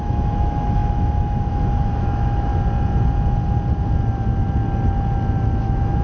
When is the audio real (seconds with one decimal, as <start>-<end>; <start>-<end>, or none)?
2.5-5.6